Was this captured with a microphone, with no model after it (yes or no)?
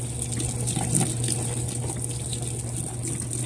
yes